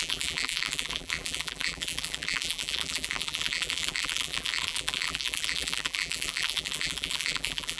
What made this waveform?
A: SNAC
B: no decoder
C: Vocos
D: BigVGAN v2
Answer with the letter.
D